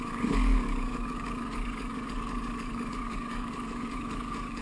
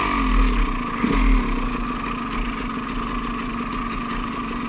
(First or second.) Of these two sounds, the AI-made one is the first